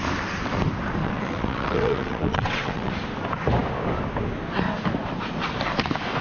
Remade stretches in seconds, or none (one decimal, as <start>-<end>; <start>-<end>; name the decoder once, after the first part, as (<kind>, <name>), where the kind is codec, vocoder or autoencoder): 1.0-2.9 (vocoder, WaveNeXt)